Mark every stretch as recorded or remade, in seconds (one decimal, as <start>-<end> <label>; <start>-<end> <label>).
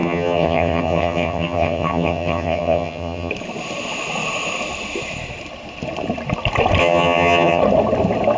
0.0-3.3 remade; 3.3-6.8 recorded; 6.8-7.6 remade; 7.6-8.4 recorded